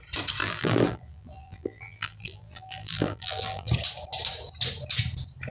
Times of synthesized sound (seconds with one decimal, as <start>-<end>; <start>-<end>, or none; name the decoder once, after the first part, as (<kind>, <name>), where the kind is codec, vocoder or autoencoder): 0.4-3.7 (vocoder, BigVGAN v2)